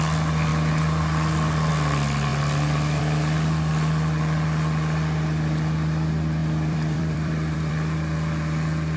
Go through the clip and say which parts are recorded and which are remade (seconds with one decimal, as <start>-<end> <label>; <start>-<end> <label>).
0.0-2.3 recorded; 2.3-3.0 remade; 3.0-6.4 recorded; 6.4-7.7 remade; 7.7-9.0 recorded

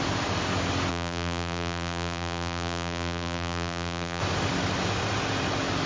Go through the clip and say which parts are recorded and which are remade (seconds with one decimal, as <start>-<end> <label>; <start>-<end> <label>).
0.0-0.9 recorded; 0.9-4.2 remade; 4.2-5.9 recorded